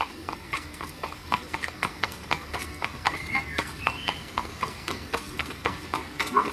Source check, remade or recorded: remade